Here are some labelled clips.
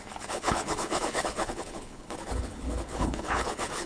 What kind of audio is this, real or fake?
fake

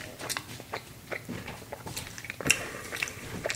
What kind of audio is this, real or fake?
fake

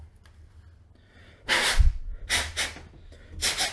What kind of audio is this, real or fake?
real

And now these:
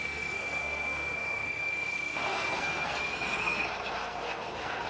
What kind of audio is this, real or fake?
fake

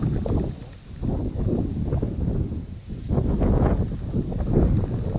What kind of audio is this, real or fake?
real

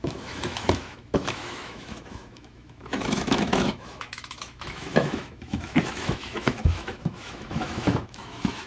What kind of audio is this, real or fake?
fake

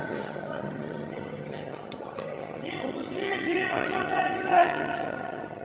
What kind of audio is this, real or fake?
fake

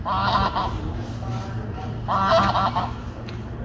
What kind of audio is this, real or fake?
real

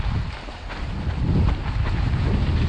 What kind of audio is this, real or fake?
real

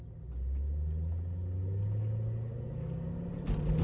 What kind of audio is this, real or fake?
real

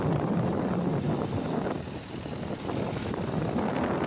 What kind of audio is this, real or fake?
real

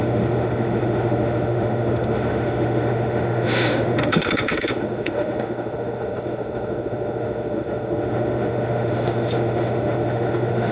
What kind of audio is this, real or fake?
fake